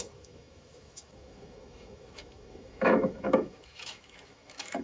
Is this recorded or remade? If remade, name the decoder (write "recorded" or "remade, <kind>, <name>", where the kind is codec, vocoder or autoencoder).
remade, autoencoder, DAC-VAE